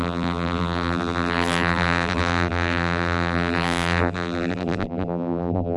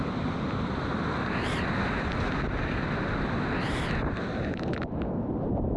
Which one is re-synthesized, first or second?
first